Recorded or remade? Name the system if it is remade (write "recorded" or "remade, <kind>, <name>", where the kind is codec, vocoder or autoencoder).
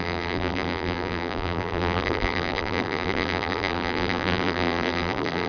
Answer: remade, vocoder, BigVGAN v2